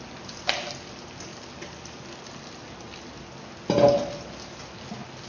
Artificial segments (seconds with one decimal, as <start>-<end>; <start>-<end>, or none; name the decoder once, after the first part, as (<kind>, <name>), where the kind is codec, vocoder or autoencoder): none

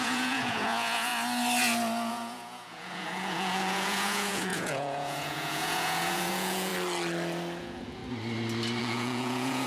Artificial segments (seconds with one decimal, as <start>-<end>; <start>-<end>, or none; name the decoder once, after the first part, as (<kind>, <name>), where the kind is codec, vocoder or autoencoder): 0.0-1.1 (vocoder, Vocos); 2.1-6.7; 7.6-8.0; 8.8-9.7

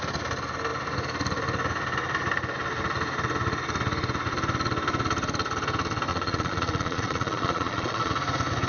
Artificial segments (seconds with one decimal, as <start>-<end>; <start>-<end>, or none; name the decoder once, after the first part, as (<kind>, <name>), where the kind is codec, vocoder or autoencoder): 6.1-8.1 (vocoder, Vocos)

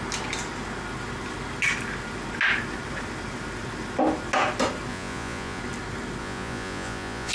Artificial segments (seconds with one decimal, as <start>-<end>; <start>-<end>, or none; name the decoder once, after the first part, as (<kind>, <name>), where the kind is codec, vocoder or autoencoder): 4.9-5.6 (vocoder, Vocos); 6.2-7.3

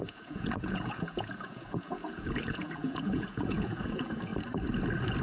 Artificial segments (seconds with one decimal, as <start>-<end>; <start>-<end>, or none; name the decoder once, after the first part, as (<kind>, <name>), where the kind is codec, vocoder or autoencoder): 0.0-4.3 (vocoder, Vocos)

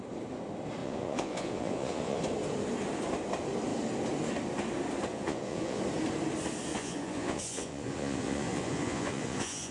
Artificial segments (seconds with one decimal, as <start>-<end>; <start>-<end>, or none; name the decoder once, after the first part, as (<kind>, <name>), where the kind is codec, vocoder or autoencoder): 0.8-2.2 (vocoder, Vocos); 5.1-5.8; 6.7-9.7

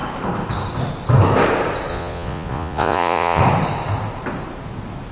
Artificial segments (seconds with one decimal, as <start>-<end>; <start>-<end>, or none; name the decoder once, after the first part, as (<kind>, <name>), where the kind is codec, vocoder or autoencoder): 1.9-3.4 (vocoder, Vocos)

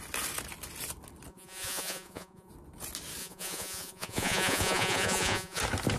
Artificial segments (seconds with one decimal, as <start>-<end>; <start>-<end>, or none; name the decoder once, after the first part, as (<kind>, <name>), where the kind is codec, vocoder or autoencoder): 1.3-2.5 (vocoder, Vocos); 3.2-5.6